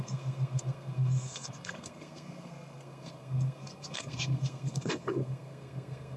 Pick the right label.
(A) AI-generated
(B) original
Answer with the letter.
A